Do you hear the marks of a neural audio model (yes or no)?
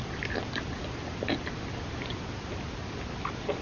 no